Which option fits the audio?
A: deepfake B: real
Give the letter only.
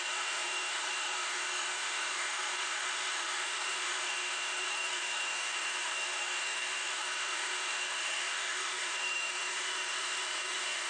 A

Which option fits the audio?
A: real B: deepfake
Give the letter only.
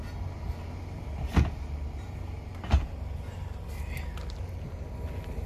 A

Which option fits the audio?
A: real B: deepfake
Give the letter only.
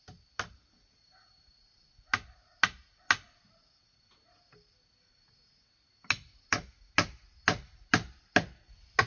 A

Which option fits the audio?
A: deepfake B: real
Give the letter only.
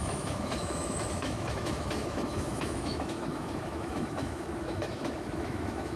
A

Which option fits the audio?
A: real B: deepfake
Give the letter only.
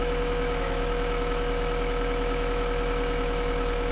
B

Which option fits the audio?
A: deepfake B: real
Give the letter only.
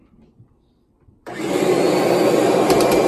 B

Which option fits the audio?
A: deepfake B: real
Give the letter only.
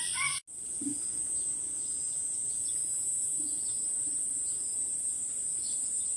B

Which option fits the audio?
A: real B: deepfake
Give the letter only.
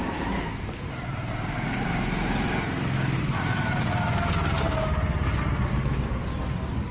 A